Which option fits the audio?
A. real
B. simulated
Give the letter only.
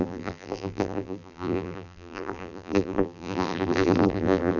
B